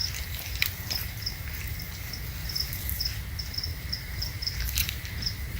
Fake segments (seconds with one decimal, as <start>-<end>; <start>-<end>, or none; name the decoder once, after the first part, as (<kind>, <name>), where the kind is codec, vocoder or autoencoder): 0.0-0.6 (vocoder, BigVGAN v2); 2.4-3.0; 3.7-5.6